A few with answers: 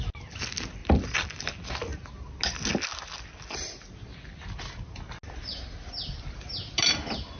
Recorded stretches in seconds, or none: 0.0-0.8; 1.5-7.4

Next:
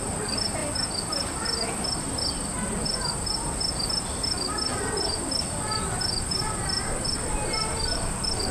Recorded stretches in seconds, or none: none

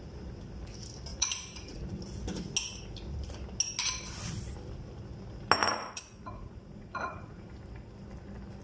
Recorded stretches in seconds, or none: 0.0-1.1; 1.8-5.6; 7.5-8.6

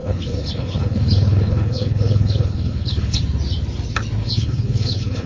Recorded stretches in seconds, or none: 3.2-4.2

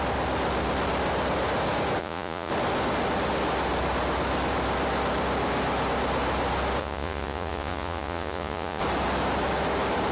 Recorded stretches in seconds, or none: 0.0-2.0; 2.5-6.8; 8.8-10.1

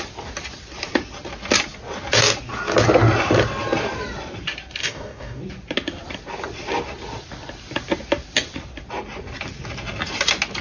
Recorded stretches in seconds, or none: 0.0-4.8; 5.4-10.6